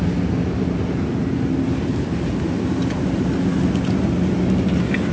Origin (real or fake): real